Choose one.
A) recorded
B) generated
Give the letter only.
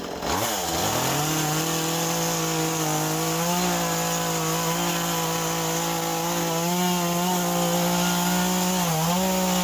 A